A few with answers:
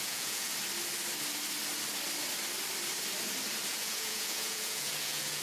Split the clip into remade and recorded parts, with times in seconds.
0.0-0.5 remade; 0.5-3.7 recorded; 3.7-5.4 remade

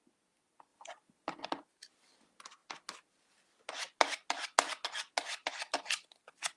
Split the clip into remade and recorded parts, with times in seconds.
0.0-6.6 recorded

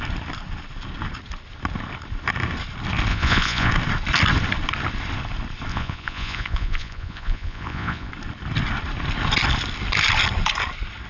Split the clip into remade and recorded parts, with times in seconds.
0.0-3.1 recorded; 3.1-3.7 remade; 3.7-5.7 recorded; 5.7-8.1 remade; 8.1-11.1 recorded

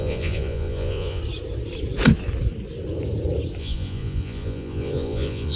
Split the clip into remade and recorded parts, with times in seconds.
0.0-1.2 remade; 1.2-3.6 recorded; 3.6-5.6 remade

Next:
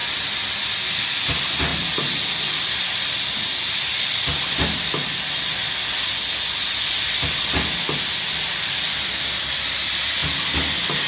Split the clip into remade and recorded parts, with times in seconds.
0.0-11.1 recorded

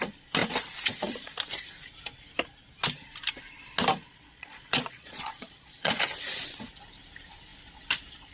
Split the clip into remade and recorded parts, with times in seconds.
0.0-3.9 recorded; 3.9-6.0 remade; 6.0-8.3 recorded

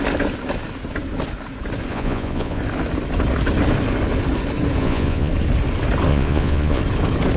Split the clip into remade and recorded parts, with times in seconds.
0.0-1.9 recorded; 1.9-2.6 remade; 2.6-4.8 recorded; 4.8-5.3 remade; 5.3-6.1 recorded; 6.1-6.8 remade; 6.8-7.4 recorded